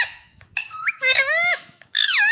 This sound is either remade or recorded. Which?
remade